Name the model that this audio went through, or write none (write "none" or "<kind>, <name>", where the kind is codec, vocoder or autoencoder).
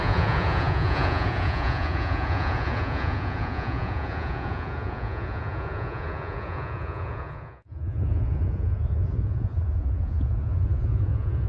vocoder, Vocos